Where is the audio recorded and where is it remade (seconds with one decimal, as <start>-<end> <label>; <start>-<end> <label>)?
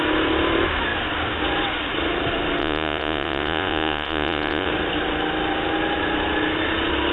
0.0-2.6 recorded; 2.6-4.7 remade; 4.7-7.1 recorded